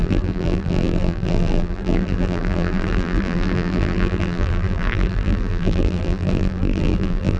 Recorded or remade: remade